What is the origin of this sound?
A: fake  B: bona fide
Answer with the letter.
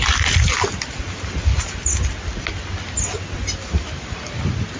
B